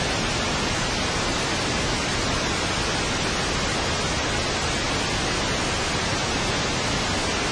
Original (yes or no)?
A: yes